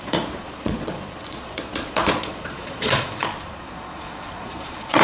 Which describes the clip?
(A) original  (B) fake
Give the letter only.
B